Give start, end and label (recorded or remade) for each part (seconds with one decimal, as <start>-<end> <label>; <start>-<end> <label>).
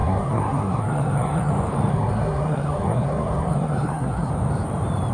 0.0-1.5 remade; 1.5-1.9 recorded; 1.9-4.3 remade; 4.3-5.1 recorded